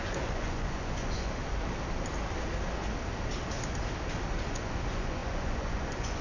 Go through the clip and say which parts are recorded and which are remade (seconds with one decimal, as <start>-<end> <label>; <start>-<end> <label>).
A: 0.0-1.4 remade; 1.4-4.5 recorded; 4.5-6.2 remade